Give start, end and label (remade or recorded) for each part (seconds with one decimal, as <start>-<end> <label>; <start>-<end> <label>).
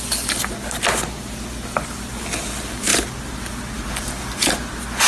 0.0-5.1 recorded